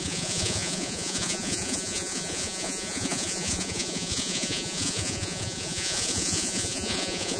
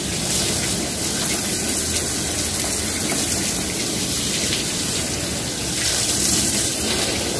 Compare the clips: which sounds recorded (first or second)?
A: second